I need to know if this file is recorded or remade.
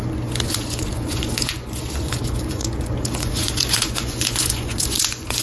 remade